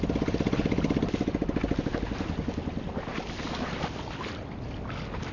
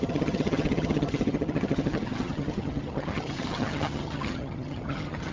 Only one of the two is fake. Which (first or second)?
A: second